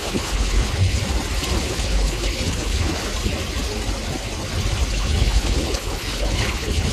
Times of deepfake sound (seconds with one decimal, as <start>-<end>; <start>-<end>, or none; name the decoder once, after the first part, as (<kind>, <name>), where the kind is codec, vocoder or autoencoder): 0.0-1.0 (codec, HILCodec); 1.7-3.1; 4.9-6.9